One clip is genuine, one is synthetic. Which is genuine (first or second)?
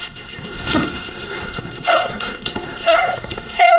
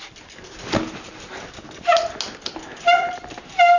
second